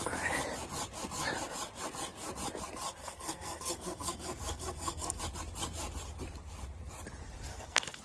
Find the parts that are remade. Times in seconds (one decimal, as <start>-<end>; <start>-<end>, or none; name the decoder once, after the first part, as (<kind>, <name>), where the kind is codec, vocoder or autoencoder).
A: 3.0-5.2 (codec, SNAC); 7.5-8.0